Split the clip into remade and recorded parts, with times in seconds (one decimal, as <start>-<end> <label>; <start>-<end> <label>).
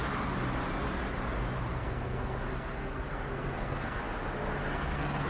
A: 0.0-1.7 recorded; 1.7-4.0 remade; 4.0-4.6 recorded; 4.6-5.3 remade